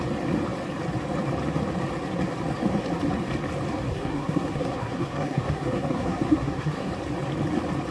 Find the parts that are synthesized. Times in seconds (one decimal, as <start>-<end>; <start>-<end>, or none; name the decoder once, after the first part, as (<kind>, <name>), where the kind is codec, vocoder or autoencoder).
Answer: 3.9-6.9 (codec, SNAC)